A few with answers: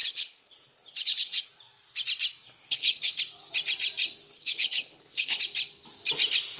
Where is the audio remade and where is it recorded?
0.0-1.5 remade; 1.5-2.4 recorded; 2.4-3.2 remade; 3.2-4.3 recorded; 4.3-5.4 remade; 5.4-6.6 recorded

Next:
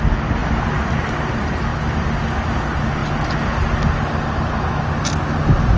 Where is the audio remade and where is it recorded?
0.0-0.4 recorded; 0.4-1.2 remade; 1.2-5.8 recorded

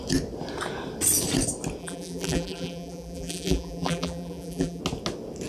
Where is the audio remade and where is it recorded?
0.0-1.8 recorded; 1.8-4.8 remade; 4.8-5.5 recorded